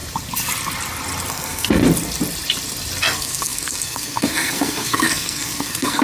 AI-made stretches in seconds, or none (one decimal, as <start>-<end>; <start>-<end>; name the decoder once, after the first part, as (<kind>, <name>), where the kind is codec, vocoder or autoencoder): 1.3-1.8 (codec, SNAC); 3.0-6.0